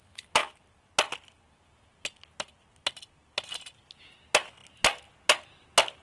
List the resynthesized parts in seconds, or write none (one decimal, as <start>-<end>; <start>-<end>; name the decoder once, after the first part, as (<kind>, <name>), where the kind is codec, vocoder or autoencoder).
none